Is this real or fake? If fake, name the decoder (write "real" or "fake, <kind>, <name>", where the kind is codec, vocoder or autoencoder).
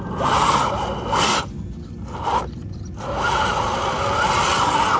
real